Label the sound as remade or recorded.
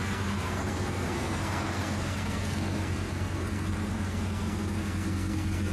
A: remade